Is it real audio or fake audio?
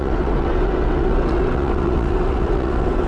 fake